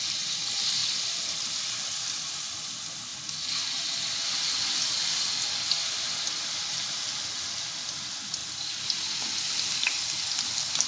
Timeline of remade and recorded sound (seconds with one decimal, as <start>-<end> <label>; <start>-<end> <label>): 0.0-0.8 recorded; 0.8-2.5 remade; 2.5-10.9 recorded